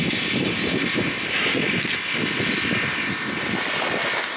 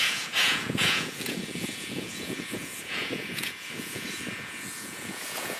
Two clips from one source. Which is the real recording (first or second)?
first